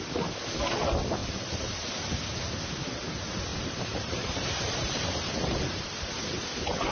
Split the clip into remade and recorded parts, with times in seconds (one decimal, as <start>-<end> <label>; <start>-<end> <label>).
0.0-1.2 recorded; 1.2-1.9 remade; 1.9-3.5 recorded; 3.5-6.1 remade; 6.1-6.9 recorded